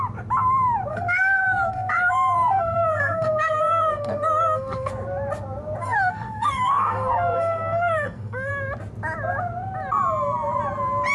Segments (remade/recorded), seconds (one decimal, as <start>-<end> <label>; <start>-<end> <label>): 0.0-0.9 recorded; 0.9-4.9 remade; 4.9-5.8 recorded; 5.8-8.5 remade; 8.5-11.1 recorded